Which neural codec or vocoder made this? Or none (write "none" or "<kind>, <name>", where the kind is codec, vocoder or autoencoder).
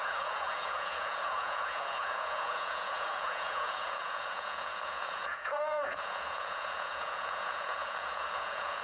vocoder, Vocos